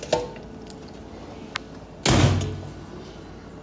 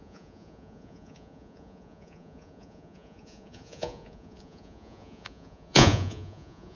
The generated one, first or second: second